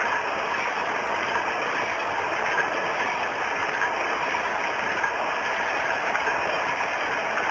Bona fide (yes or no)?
yes